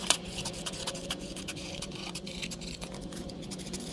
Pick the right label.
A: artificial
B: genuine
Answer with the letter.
A